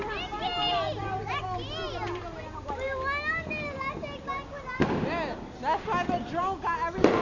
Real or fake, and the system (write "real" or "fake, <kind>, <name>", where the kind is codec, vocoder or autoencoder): real